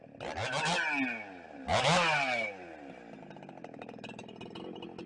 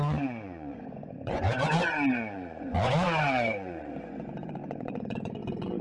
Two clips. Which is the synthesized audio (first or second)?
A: second